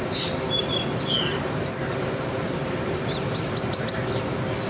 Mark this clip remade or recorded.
recorded